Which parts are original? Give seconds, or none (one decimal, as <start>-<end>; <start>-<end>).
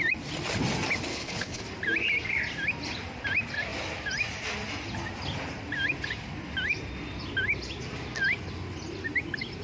0.0-1.1; 1.6-9.6